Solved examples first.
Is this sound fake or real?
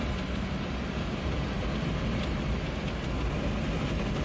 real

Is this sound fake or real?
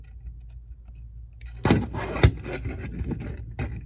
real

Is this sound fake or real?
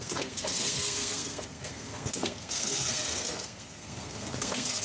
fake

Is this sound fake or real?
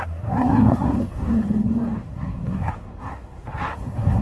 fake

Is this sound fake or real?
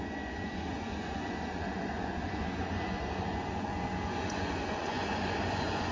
fake